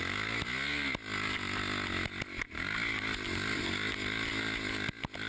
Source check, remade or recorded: recorded